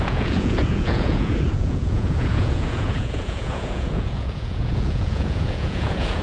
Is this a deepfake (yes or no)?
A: yes